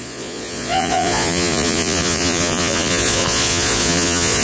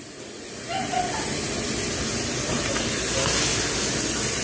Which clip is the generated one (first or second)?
first